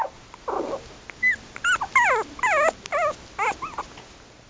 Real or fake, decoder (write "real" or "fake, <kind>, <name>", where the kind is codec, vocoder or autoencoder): real